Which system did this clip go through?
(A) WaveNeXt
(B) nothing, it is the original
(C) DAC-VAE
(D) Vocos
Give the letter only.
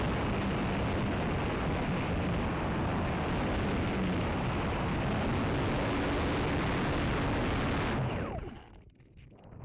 B